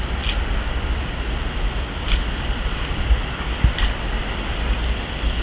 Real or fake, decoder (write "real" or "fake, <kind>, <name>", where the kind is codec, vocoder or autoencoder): real